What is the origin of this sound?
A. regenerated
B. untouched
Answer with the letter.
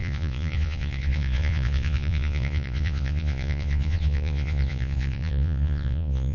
A